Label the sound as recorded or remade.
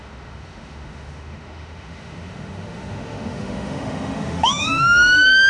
remade